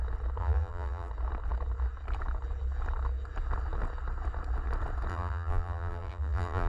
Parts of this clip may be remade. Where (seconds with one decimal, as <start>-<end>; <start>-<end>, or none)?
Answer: 0.4-1.1; 5.1-6.7

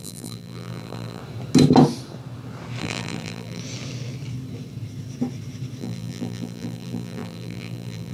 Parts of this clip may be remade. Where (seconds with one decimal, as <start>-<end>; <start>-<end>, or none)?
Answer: 0.0-1.2; 2.8-3.6; 5.8-8.1

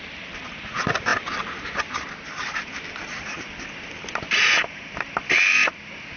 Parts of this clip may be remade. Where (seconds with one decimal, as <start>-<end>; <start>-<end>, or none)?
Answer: none

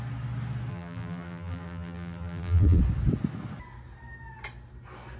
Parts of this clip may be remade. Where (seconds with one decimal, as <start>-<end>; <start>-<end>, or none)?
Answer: 0.7-2.8

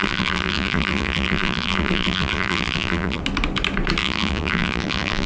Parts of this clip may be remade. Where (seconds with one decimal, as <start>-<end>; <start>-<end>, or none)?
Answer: 0.0-3.2; 4.0-5.3